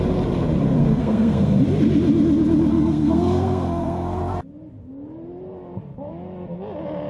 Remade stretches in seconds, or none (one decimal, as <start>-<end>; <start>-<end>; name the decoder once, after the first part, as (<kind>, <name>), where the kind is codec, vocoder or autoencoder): 0.8-1.6 (codec, SNAC); 2.7-4.2